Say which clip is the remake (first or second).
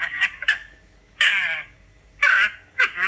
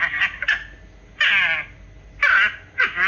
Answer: first